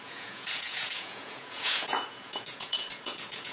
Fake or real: fake